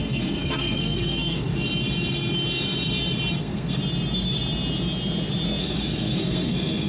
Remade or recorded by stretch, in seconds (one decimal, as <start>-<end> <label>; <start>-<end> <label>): 0.0-1.5 remade; 1.5-3.4 recorded; 3.4-3.8 remade; 3.8-5.6 recorded; 5.6-6.9 remade